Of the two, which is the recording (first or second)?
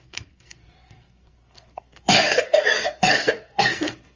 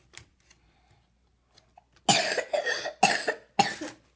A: second